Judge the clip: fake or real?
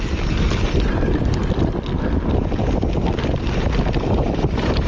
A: real